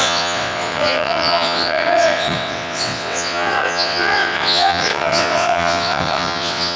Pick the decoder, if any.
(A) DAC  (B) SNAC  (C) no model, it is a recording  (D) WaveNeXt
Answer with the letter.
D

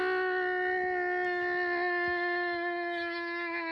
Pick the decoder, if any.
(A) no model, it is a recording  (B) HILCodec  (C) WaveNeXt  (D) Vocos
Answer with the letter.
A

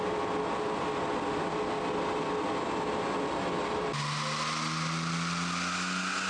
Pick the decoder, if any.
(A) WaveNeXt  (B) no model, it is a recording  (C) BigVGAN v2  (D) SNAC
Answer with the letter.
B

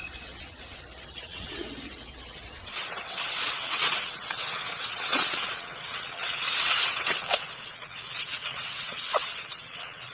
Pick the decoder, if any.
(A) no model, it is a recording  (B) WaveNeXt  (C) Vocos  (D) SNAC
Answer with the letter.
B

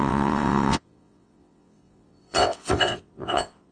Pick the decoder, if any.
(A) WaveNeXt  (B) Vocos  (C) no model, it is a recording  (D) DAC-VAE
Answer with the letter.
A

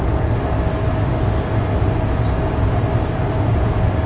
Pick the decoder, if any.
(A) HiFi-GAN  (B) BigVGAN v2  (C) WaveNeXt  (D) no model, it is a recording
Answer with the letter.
D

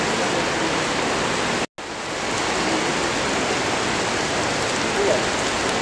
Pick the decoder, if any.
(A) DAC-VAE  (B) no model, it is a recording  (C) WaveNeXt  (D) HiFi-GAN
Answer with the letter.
B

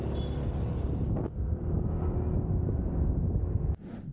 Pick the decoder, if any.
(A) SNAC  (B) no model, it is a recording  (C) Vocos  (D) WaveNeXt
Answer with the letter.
B